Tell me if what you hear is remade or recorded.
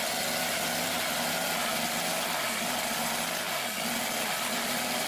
recorded